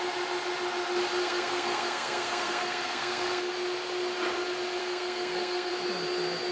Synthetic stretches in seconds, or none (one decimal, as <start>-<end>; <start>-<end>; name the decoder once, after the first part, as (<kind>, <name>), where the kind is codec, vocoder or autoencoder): 1.2-3.5 (codec, SNAC); 4.8-5.7